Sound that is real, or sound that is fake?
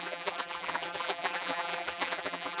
fake